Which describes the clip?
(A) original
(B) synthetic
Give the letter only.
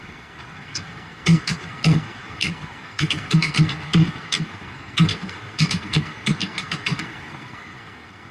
B